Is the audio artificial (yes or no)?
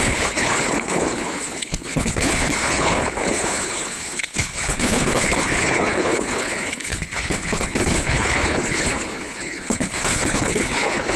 yes